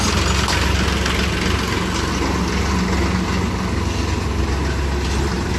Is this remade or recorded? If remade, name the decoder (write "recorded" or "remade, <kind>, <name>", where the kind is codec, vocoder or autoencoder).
recorded